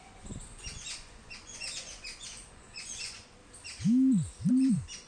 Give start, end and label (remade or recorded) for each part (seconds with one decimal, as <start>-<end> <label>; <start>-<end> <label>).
0.0-3.4 remade; 3.4-4.5 recorded; 4.5-5.1 remade